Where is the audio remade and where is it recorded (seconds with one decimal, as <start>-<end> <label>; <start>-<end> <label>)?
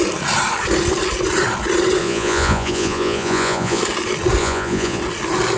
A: 0.0-2.0 recorded; 2.0-3.8 remade; 3.8-4.4 recorded; 4.4-5.0 remade; 5.0-5.6 recorded